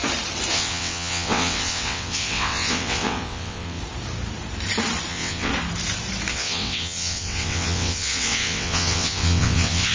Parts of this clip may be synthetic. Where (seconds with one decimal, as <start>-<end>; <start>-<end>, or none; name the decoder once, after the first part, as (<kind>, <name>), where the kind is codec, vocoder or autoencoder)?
0.5-3.8 (vocoder, WaveNeXt); 5.1-5.5; 6.3-9.9